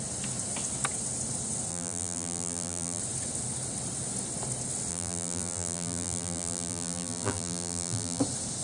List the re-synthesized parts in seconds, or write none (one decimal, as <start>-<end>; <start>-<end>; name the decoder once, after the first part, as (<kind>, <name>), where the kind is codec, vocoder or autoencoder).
1.7-3.0 (vocoder, BigVGAN v2); 4.9-8.2